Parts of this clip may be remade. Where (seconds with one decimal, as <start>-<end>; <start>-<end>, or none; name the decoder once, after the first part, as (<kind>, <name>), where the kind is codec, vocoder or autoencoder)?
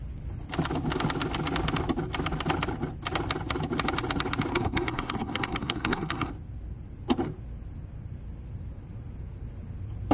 4.5-6.3 (codec, SNAC)